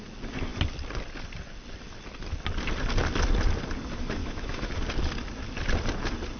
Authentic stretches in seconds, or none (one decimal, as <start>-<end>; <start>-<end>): 0.0-4.2; 4.7-6.4